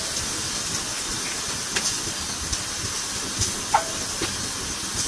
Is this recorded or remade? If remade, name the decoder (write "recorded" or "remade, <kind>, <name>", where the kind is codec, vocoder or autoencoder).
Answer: recorded